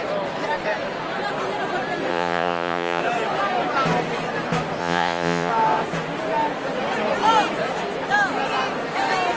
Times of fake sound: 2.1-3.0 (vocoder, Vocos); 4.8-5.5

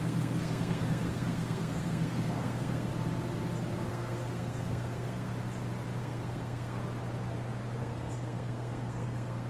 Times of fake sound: 0.0-2.9 (codec, SNAC); 3.9-5.3; 6.0-6.8; 7.8-9.5

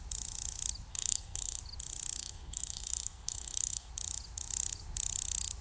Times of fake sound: 0.9-1.6 (codec, SNAC); 2.2-3.9

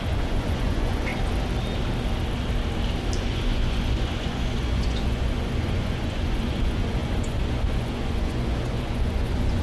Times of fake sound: 0.0-1.1 (vocoder, Vocos); 3.2-9.6

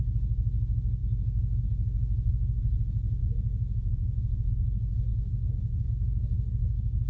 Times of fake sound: 0.0-3.2 (codec, HILCodec); 4.5-7.1

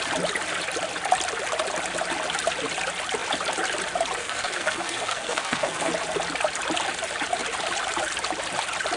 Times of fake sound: 4.2-5.9 (codec, SNAC)

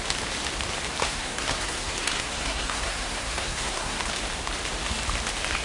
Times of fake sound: 1.0-4.0 (codec, SNAC)

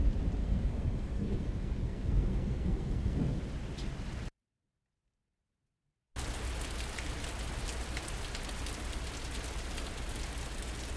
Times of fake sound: 0.4-3.4 (codec, SNAC)